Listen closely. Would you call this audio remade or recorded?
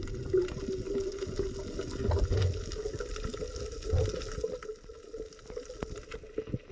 recorded